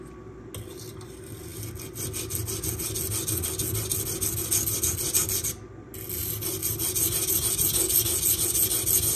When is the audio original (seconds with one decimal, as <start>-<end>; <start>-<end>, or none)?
0.0-9.2